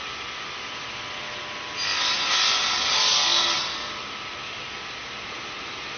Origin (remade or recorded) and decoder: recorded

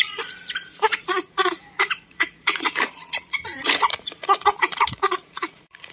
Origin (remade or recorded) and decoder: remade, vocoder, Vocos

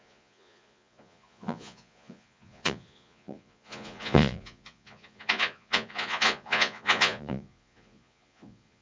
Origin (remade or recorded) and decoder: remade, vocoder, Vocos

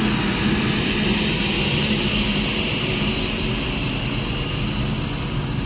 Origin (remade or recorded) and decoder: recorded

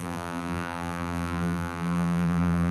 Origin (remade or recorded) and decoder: remade, vocoder, BigVGAN v2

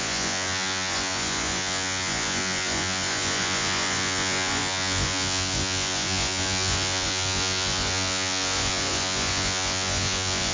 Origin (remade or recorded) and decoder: remade, vocoder, Vocos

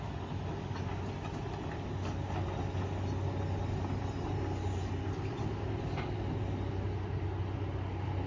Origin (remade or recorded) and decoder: recorded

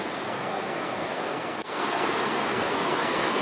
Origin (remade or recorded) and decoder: remade, codec, SNAC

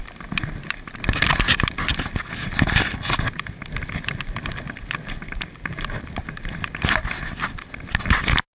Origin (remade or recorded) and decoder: recorded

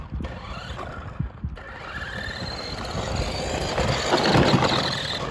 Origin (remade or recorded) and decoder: recorded